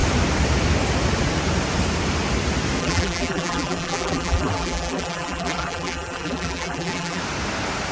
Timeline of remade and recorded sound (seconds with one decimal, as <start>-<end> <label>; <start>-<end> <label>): 0.0-2.8 recorded; 2.8-7.2 remade; 7.2-7.9 recorded